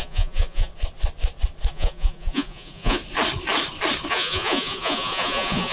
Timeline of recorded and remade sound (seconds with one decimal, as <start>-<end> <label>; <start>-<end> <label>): 0.0-0.7 remade; 0.7-1.7 recorded; 1.7-3.0 remade; 3.0-4.1 recorded; 4.1-5.7 remade